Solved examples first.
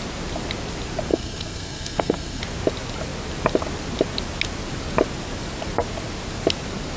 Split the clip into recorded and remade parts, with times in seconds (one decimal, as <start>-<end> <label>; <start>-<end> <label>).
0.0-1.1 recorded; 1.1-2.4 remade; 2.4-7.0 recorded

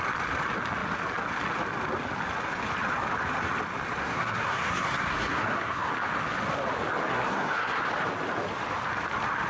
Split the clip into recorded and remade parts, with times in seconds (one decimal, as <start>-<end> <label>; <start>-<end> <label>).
0.0-4.0 recorded; 4.0-5.9 remade; 5.9-7.1 recorded; 7.1-7.8 remade; 7.8-9.5 recorded

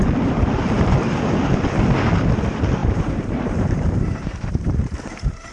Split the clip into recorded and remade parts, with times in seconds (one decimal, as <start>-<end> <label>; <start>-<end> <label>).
0.0-2.8 recorded; 2.8-5.5 remade

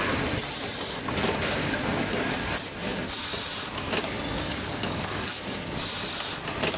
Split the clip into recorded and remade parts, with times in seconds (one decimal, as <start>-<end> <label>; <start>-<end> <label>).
0.0-4.3 recorded; 4.3-5.4 remade; 5.4-6.8 recorded

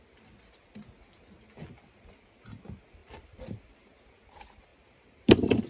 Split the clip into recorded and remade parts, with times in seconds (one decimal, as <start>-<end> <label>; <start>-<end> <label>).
0.0-3.0 recorded; 3.0-3.9 remade; 3.9-4.7 recorded; 4.7-5.7 remade

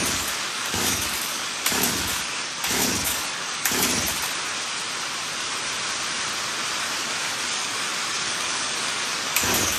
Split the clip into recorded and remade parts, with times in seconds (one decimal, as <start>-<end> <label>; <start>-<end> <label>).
0.0-3.9 remade; 3.9-6.8 recorded; 6.8-9.8 remade